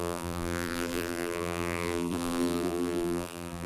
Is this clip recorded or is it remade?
remade